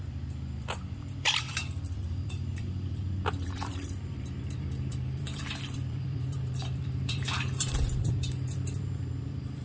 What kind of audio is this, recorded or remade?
remade